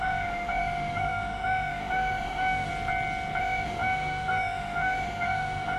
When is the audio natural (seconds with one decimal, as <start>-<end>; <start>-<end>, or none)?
2.7-3.4

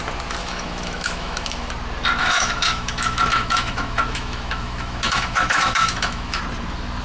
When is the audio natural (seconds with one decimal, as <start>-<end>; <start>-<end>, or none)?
0.0-0.4; 1.7-2.2; 6.4-7.0

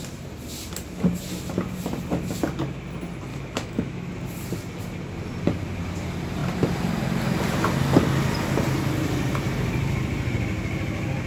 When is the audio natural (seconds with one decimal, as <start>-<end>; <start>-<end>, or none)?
0.0-3.3; 4.1-11.3